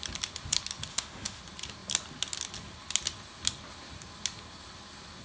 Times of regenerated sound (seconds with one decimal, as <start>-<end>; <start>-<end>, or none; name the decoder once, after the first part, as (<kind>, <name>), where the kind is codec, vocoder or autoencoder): 0.9-1.4 (autoencoder, DAC-VAE)